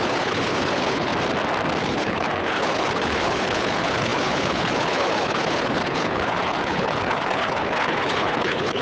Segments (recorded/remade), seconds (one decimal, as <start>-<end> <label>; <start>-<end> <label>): 0.0-1.1 remade; 1.1-1.8 recorded; 1.8-8.8 remade